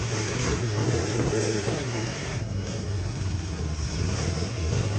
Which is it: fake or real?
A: fake